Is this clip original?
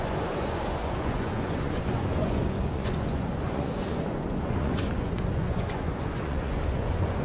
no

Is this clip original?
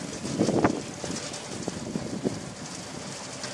yes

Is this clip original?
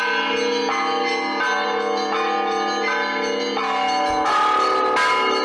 yes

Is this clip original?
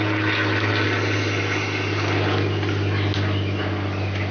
yes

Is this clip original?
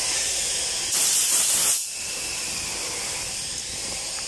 yes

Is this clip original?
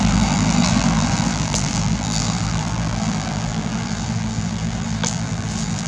no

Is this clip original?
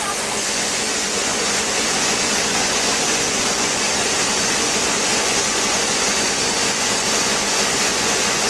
no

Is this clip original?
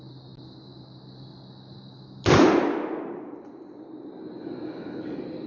yes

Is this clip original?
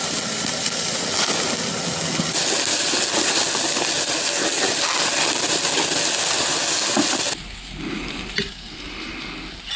yes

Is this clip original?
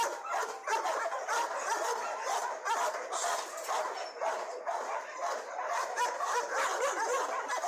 yes